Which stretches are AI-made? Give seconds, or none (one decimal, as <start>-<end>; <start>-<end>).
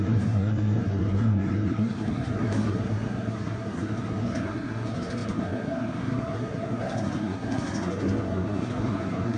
0.0-9.4